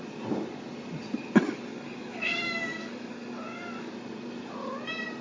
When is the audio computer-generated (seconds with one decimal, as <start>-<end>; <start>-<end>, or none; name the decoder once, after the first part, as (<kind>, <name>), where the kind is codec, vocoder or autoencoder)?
1.7-3.9 (codec, DAC)